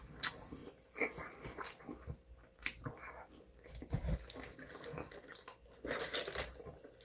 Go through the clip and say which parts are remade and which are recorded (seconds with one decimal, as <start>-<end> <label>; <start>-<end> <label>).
0.0-4.9 recorded; 4.9-5.6 remade; 5.6-7.0 recorded